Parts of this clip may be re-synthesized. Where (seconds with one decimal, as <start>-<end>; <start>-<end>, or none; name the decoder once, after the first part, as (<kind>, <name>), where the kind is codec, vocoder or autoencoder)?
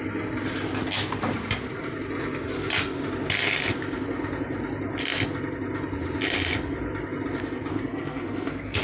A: 7.7-8.8 (codec, SNAC)